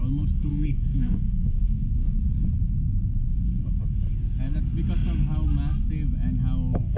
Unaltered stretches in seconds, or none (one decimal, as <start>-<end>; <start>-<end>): 0.0-0.5; 2.2-7.0